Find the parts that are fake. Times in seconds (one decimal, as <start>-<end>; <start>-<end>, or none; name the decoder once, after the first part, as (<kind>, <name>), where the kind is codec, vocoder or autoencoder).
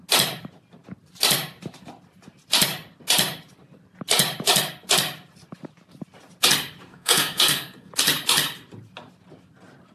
6.9-7.9 (codec, SNAC)